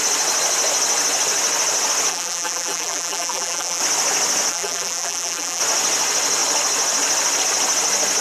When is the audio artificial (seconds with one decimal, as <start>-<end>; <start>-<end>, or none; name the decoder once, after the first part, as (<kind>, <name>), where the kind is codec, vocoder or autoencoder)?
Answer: 2.1-3.8 (vocoder, BigVGAN v2); 4.5-5.6